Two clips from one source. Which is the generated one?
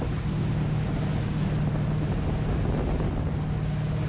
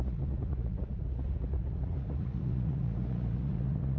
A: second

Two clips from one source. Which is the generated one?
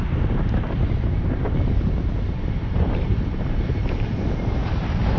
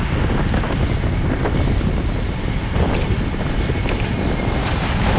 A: first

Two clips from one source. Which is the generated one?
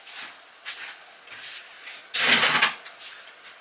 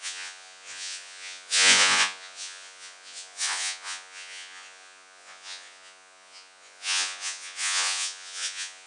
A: second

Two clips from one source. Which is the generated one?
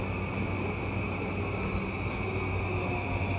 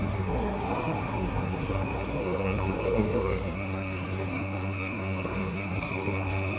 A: second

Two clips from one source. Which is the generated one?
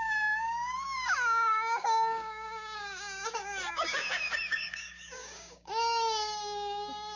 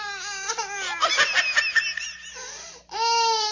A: first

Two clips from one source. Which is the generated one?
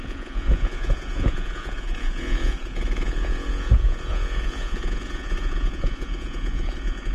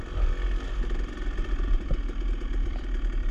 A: first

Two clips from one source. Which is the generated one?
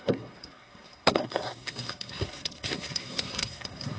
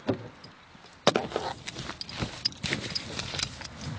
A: first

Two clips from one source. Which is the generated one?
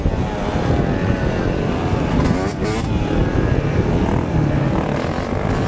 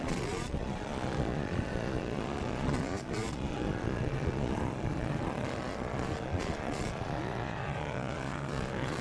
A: second